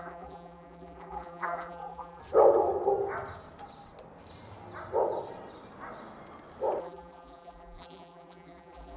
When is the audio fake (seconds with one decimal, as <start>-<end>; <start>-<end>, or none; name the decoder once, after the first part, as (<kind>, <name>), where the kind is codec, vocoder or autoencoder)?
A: 0.0-2.2 (vocoder, BigVGAN v2); 6.8-9.0